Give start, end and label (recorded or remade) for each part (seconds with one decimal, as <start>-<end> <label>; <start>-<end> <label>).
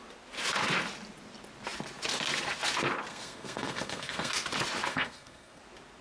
0.0-3.1 recorded; 3.1-4.3 remade; 4.3-4.9 recorded; 4.9-5.6 remade; 5.6-6.0 recorded